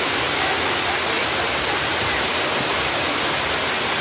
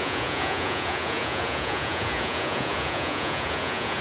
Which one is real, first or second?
first